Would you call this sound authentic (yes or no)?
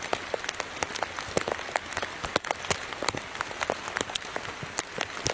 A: yes